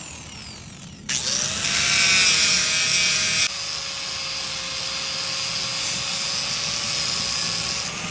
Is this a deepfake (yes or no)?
no